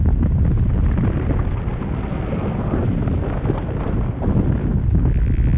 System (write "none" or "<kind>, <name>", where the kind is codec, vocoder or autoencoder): none